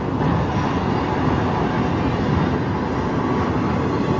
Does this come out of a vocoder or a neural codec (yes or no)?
no